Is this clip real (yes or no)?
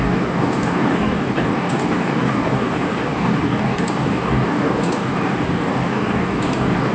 no